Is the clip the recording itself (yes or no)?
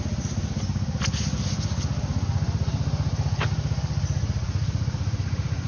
yes